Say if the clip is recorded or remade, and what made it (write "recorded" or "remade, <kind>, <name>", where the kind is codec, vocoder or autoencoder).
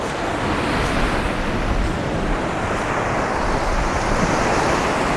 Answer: recorded